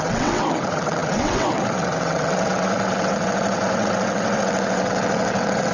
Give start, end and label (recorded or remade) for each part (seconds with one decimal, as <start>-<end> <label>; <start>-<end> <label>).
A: 0.0-5.7 remade